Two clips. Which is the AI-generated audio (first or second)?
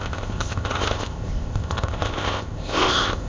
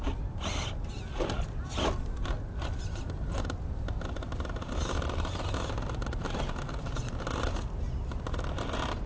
first